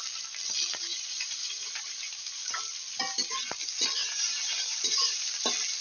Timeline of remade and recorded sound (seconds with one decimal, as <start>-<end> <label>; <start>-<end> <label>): 0.0-0.9 recorded; 0.9-2.6 remade; 2.6-4.0 recorded; 4.0-5.3 remade; 5.3-5.8 recorded